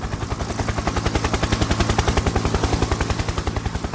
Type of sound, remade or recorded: recorded